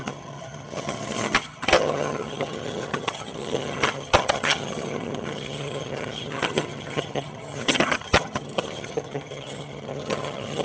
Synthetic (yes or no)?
yes